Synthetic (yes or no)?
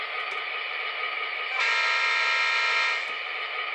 no